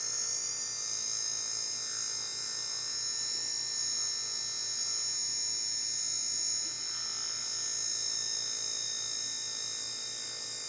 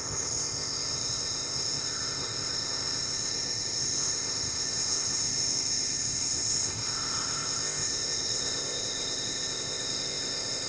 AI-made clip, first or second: second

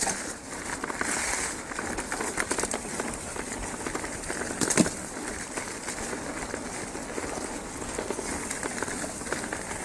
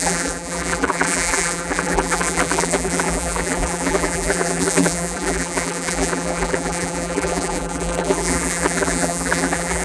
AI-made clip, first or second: second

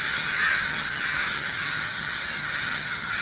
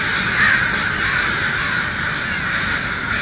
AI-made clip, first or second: first